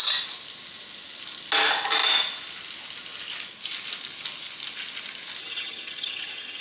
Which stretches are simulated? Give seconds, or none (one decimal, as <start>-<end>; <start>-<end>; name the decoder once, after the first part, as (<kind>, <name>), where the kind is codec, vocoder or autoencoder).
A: 5.4-6.6 (vocoder, HiFi-GAN)